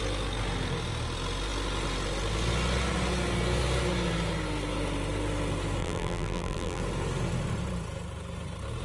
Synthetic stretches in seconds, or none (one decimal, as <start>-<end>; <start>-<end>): 5.8-6.8